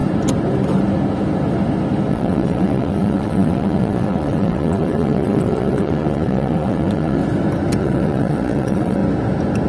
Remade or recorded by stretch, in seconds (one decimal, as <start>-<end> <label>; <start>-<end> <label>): 0.0-2.1 recorded; 2.1-7.2 remade; 7.2-7.8 recorded; 7.8-9.0 remade; 9.0-9.7 recorded